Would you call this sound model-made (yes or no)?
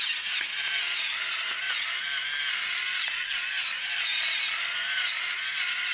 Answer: no